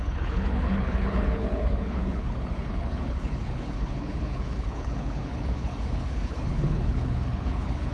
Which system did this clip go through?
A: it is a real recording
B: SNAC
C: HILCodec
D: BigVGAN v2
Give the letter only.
C